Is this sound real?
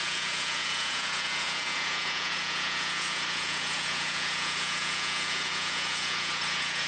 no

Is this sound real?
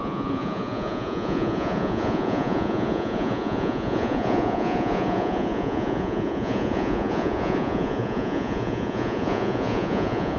no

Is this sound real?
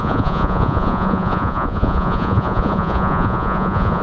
no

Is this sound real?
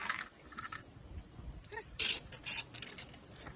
yes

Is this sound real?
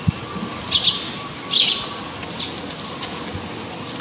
yes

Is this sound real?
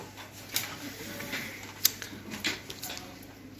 yes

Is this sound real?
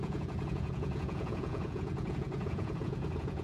no